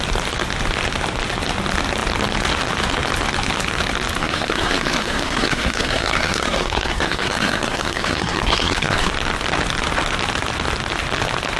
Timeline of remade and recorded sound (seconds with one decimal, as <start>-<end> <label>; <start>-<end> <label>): 0.0-4.2 recorded; 4.2-9.1 remade; 9.1-11.6 recorded